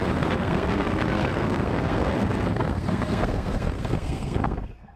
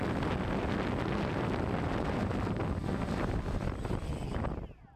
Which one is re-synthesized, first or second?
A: first